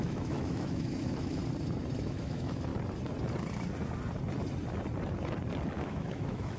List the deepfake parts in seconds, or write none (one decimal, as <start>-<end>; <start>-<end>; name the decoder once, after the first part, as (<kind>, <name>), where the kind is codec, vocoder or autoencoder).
0.0-1.4 (autoencoder, DAC-VAE); 2.0-2.7; 5.8-6.6